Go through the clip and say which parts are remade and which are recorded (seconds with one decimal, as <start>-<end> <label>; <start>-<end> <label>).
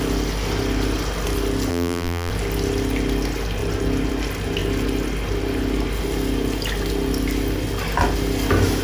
0.0-1.7 recorded; 1.7-2.3 remade; 2.3-8.8 recorded